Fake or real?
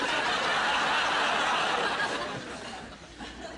real